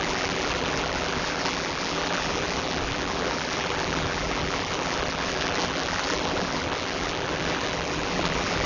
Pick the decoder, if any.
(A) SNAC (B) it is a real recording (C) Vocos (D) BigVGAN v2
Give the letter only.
D